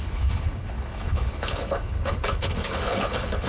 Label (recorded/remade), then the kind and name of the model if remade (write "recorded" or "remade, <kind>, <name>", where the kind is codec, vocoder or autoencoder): remade, codec, HILCodec